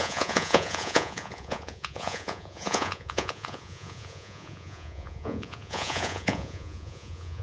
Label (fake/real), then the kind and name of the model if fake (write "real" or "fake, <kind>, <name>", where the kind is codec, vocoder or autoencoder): fake, vocoder, Vocos